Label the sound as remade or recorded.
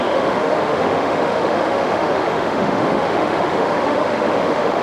remade